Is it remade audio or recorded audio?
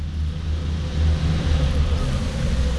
recorded